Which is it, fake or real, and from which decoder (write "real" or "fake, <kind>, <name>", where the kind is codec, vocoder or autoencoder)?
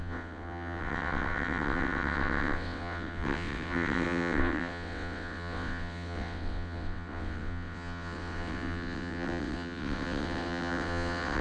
fake, vocoder, WaveNeXt